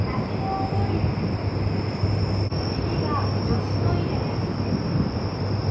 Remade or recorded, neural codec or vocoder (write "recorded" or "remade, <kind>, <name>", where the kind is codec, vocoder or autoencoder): recorded